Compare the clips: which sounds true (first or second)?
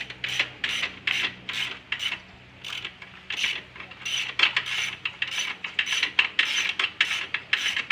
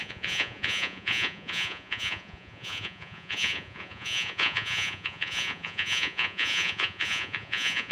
first